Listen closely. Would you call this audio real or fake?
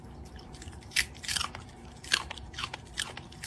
fake